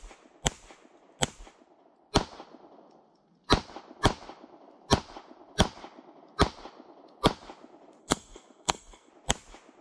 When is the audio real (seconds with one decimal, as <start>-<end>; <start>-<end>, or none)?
0.0-8.0; 9.1-9.8